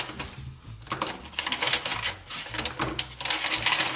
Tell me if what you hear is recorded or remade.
recorded